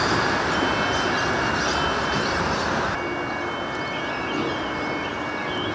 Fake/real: real